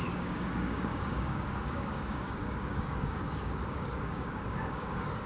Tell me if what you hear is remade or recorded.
remade